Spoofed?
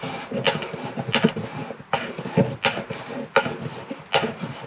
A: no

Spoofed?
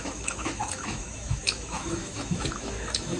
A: yes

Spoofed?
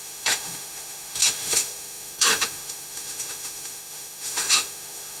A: yes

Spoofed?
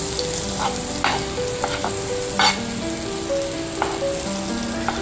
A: no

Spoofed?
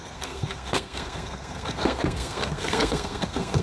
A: yes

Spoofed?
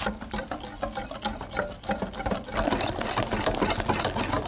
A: no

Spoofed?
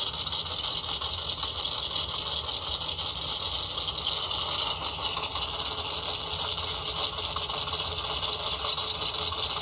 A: no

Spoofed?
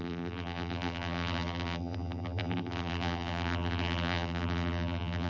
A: yes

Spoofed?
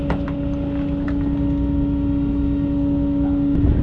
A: no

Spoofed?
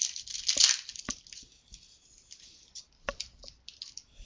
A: no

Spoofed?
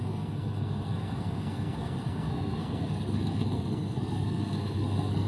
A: yes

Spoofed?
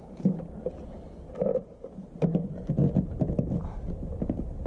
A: no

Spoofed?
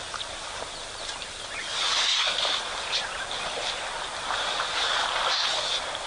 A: no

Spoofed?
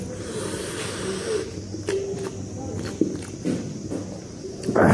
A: no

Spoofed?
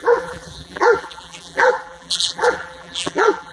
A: yes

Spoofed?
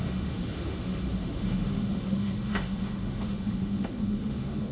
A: yes